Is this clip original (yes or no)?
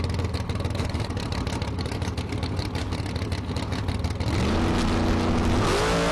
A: yes